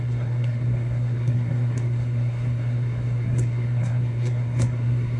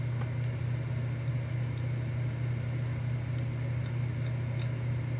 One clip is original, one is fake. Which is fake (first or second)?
first